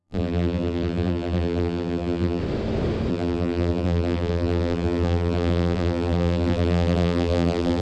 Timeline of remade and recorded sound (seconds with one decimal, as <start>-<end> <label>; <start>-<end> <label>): 0.0-2.4 remade; 2.4-3.1 recorded; 3.1-7.8 remade